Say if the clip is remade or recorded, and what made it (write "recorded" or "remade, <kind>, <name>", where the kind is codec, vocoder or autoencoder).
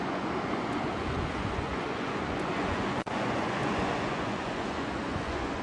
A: remade, vocoder, Vocos